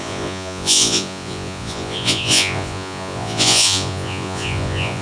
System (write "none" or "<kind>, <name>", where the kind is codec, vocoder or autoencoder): vocoder, Vocos